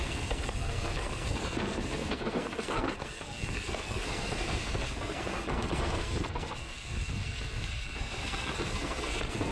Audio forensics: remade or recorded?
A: remade